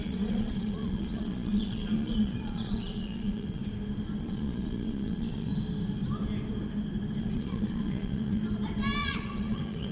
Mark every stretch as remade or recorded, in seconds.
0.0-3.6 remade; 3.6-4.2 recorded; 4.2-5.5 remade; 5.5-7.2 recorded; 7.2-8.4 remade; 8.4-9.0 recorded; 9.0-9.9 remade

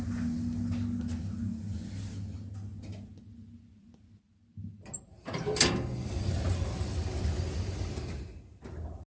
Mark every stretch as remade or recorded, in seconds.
0.0-9.1 recorded

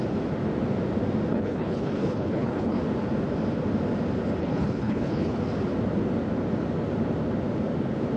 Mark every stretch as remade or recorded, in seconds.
0.0-1.3 recorded; 1.3-2.8 remade; 2.8-4.4 recorded; 4.4-5.4 remade; 5.4-8.2 recorded